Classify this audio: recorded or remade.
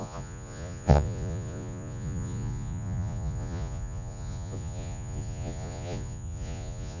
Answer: remade